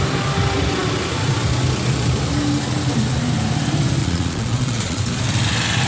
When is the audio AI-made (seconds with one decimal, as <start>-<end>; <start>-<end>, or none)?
4.0-5.0